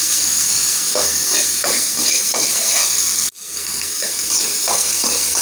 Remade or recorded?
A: remade